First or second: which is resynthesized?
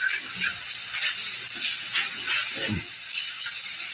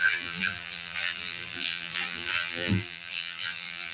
second